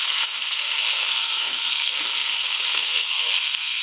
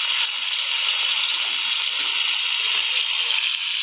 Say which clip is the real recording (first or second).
second